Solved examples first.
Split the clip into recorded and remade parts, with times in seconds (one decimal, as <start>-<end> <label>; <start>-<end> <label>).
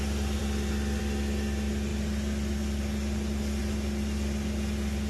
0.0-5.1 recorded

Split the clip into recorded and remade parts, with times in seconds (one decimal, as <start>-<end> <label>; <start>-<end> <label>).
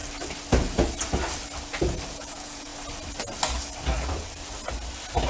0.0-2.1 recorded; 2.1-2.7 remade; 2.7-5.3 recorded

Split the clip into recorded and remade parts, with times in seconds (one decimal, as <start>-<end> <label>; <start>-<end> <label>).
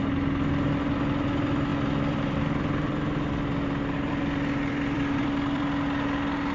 0.0-1.7 recorded; 1.7-5.6 remade; 5.6-6.5 recorded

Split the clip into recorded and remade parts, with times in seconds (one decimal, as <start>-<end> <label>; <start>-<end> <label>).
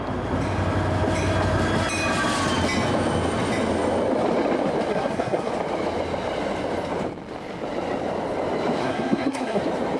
0.0-4.9 recorded; 4.9-5.5 remade; 5.5-8.8 recorded; 8.8-9.6 remade; 9.6-10.0 recorded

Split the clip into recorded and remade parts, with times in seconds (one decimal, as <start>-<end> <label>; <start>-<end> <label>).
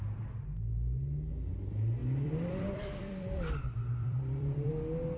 0.0-0.7 recorded; 0.7-1.3 remade; 1.3-2.0 recorded; 2.0-4.7 remade; 4.7-5.2 recorded